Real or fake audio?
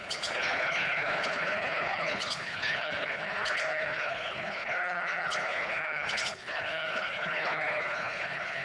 fake